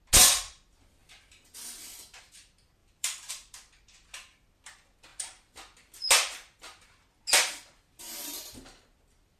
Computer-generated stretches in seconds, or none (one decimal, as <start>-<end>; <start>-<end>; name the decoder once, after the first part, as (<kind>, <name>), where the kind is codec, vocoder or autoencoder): 2.8-3.3 (vocoder, BigVGAN v2)